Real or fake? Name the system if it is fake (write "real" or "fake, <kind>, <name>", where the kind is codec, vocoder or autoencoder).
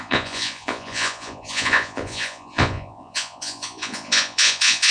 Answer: fake, vocoder, Vocos